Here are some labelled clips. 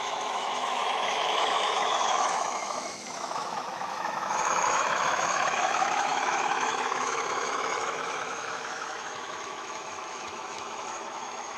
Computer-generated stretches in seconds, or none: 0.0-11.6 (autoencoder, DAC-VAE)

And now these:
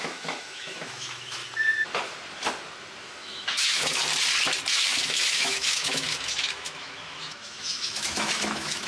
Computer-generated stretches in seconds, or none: 0.0-1.4 (autoencoder, DAC-VAE); 3.0-4.0; 4.7-8.9

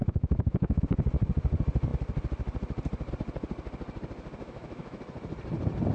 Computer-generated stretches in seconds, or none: 0.0-0.8 (autoencoder, DAC-VAE); 4.4-5.0

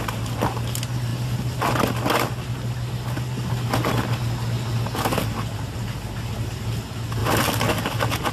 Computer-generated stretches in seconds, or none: none

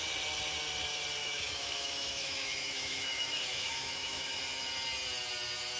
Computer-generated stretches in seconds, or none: 1.2-4.4 (autoencoder, DAC-VAE)

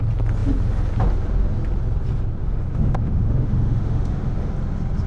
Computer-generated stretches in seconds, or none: 2.4-4.5 (autoencoder, DAC-VAE)